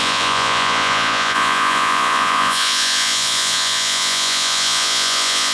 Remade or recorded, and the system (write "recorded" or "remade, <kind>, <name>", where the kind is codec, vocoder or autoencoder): remade, vocoder, Vocos